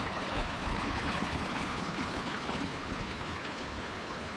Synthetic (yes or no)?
yes